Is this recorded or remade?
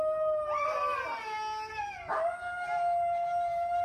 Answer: recorded